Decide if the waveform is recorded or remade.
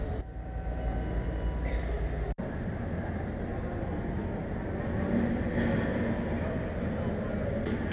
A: recorded